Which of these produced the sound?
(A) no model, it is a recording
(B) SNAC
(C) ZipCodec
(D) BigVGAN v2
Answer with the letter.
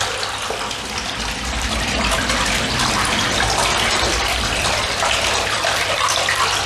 D